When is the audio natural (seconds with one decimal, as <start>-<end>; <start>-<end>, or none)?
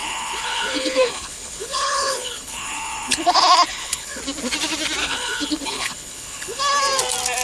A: 4.2-5.0; 6.6-7.4